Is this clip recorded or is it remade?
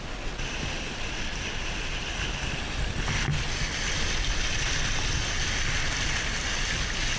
recorded